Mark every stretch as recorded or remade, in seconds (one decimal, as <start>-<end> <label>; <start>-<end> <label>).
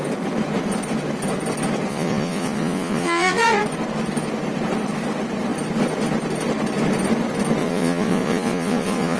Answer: 0.0-1.9 recorded; 1.9-3.6 remade; 3.6-7.6 recorded; 7.6-9.2 remade